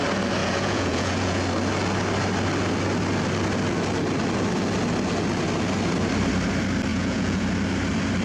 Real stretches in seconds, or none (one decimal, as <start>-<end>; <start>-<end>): 0.0-0.4; 1.4-6.9; 7.4-8.2